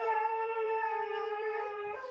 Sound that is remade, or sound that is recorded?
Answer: remade